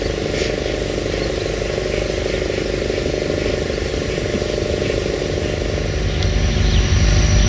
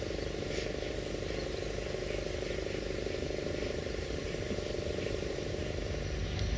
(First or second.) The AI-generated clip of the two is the second